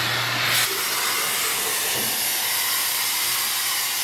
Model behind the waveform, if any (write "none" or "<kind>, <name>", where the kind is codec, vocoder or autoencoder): none